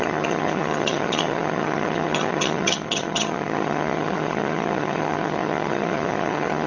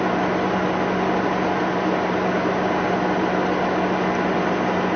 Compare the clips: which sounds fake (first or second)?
first